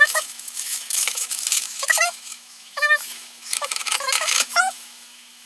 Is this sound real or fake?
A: fake